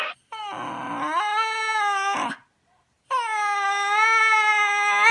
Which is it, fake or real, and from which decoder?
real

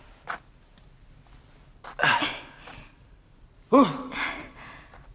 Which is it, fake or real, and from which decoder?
real